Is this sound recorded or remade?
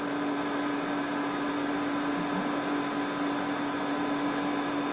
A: recorded